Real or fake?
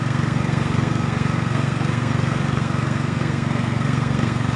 fake